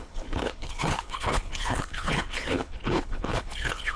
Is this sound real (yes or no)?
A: no